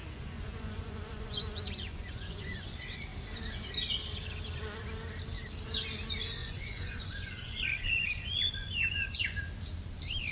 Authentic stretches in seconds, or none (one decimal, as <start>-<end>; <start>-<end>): 2.7-6.4; 9.4-10.3